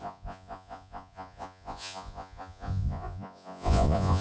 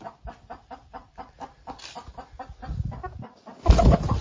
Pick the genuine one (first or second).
second